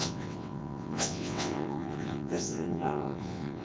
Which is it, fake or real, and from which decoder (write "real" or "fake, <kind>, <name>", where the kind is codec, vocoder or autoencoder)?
fake, vocoder, WaveNeXt